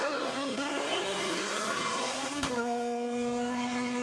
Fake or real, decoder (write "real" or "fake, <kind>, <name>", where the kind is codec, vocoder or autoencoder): fake, codec, SNAC